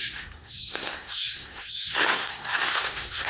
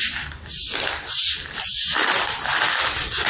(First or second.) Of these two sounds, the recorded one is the second